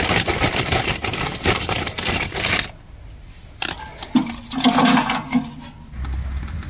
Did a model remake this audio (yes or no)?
no